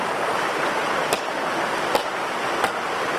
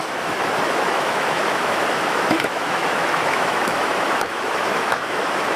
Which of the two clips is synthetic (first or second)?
second